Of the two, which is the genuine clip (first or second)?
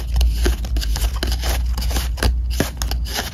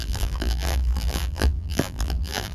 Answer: first